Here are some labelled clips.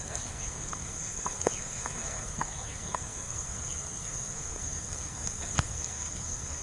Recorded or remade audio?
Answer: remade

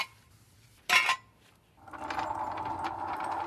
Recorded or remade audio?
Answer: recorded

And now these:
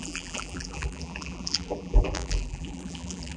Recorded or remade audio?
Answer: remade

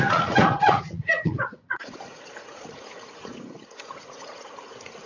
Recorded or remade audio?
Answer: remade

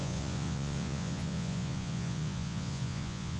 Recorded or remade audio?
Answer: remade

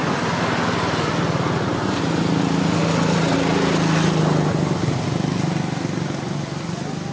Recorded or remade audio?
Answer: recorded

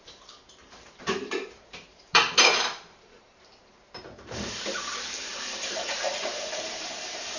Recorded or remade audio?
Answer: remade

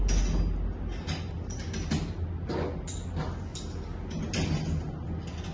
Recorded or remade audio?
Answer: recorded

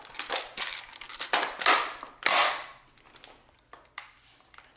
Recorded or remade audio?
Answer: recorded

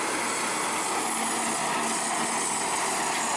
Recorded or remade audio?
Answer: recorded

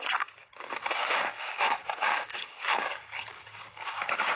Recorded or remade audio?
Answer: remade